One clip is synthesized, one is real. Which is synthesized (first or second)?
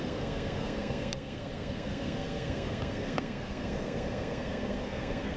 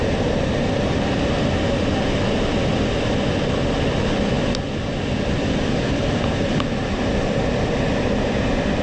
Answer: first